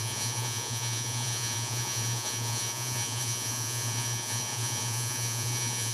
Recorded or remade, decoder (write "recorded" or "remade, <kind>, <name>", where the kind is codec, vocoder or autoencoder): remade, vocoder, Vocos